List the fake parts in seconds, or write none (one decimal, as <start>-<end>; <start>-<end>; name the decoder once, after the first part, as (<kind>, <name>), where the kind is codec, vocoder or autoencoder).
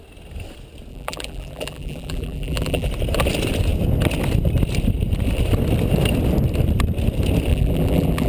0.9-2.9 (vocoder, BigVGAN v2); 7.5-8.3